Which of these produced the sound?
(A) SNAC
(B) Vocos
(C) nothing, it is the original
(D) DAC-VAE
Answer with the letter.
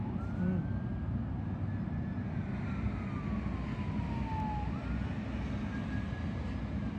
C